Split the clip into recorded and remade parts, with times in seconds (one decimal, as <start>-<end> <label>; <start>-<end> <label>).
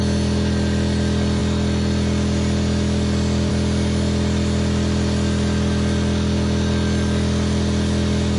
0.0-8.4 recorded